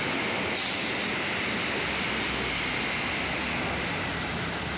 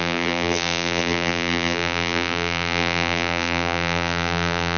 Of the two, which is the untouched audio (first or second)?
first